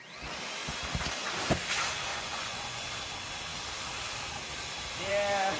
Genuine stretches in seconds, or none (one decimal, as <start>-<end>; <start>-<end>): 0.0-2.1; 2.9-5.6